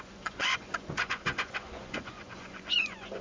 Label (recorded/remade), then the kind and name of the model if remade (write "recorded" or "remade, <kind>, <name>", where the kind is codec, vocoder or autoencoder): remade, vocoder, Vocos